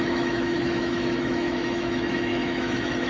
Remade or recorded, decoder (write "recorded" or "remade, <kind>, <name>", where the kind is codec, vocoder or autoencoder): remade, autoencoder, DAC-VAE